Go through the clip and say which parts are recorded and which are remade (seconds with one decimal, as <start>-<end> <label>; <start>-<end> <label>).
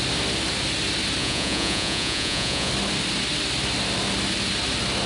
0.0-1.2 recorded; 1.2-2.7 remade; 2.7-5.1 recorded